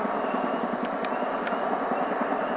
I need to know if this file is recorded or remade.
recorded